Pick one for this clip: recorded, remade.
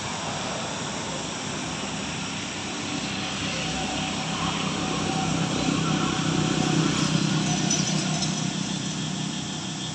recorded